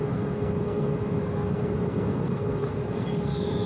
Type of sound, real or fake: fake